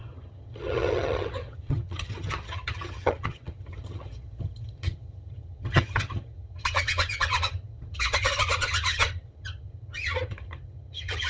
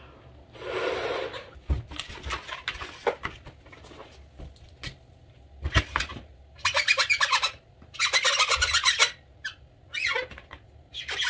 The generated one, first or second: first